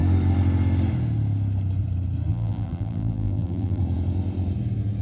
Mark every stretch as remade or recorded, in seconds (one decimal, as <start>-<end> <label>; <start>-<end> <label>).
0.0-2.3 recorded; 2.3-3.8 remade; 3.8-5.0 recorded